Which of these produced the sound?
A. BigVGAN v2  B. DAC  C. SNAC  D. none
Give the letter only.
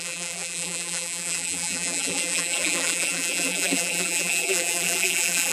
A